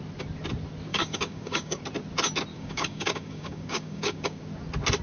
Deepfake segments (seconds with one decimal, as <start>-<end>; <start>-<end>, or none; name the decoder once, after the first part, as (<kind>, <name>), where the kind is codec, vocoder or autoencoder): 0.9-1.8 (codec, DAC); 2.5-4.4